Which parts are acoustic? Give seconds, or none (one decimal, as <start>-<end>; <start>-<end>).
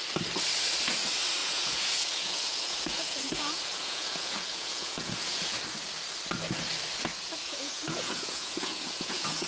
0.0-1.4; 5.4-7.4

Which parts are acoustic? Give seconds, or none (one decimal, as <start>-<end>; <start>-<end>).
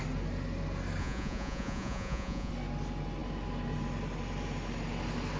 0.0-1.0; 2.5-5.4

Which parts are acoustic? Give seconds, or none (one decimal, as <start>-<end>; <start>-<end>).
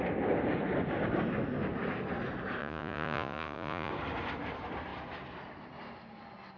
0.0-2.6; 3.9-6.6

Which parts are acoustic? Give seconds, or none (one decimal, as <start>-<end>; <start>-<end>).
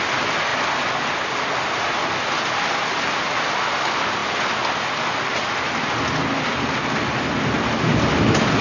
0.0-8.6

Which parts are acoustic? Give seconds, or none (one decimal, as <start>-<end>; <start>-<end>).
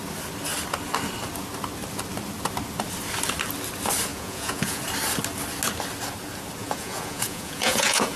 0.0-4.1; 4.8-6.6